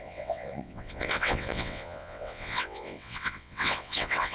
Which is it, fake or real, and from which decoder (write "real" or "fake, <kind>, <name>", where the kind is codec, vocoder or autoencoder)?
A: fake, vocoder, WaveNeXt